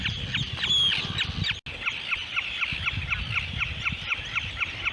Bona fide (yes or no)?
yes